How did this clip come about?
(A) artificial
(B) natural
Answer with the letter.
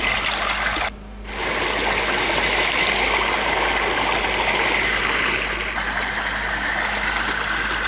B